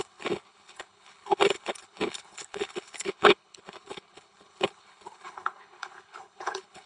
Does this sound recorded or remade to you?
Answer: remade